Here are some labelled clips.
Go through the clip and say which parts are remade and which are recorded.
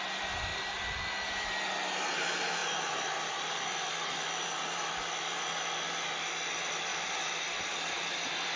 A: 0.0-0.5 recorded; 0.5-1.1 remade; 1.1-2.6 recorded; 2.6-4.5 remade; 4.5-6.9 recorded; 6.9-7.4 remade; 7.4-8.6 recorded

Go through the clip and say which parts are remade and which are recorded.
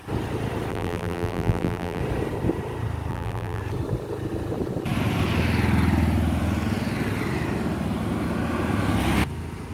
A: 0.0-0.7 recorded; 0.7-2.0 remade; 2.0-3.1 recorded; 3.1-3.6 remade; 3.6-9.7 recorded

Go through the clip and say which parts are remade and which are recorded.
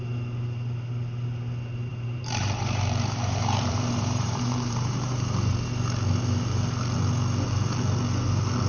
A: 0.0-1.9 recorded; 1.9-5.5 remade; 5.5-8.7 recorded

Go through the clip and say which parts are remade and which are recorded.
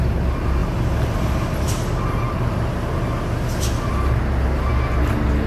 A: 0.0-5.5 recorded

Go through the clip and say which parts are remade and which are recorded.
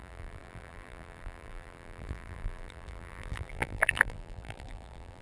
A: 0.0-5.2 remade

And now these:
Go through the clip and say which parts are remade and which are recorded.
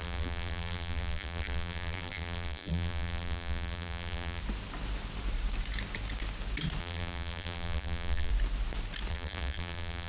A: 0.0-4.4 remade; 4.4-6.8 recorded; 6.8-8.3 remade; 8.3-9.1 recorded; 9.1-10.1 remade